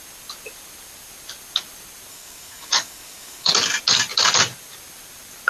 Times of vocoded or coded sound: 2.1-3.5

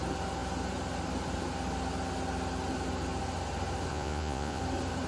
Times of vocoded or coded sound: 3.9-4.6

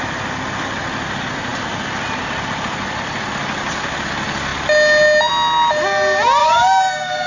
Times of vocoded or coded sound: 6.4-7.3

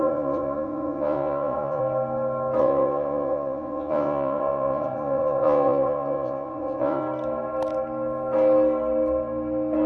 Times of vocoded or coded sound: 0.0-1.8; 2.6-7.0

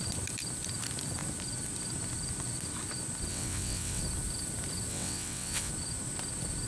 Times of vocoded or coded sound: 3.3-4.0; 4.9-5.7

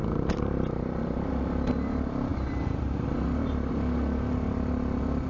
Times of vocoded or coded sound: 0.0-1.3

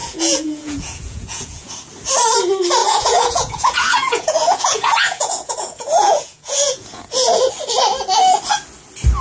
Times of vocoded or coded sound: 0.0-1.7; 2.8-7.5